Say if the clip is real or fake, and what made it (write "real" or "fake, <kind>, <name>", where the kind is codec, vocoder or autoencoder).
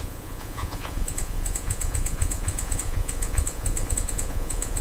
fake, vocoder, Vocos